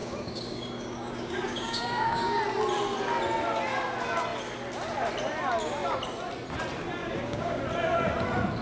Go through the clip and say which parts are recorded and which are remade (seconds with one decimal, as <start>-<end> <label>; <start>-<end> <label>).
0.0-2.4 remade; 2.4-7.0 recorded; 7.0-7.6 remade; 7.6-8.6 recorded